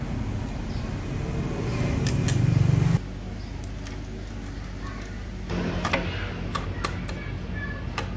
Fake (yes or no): no